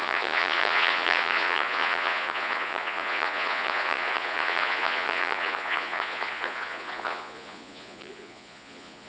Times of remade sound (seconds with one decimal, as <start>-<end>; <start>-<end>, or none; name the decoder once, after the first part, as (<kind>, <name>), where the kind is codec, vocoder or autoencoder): 0.0-9.1 (vocoder, Vocos)